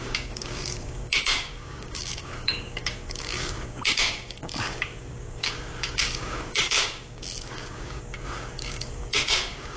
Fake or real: fake